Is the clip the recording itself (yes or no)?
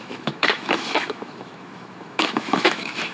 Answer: no